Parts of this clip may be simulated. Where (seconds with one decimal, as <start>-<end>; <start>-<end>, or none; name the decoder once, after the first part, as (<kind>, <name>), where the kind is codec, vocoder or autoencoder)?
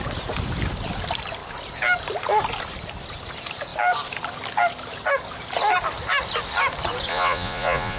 7.1-8.0 (vocoder, Vocos)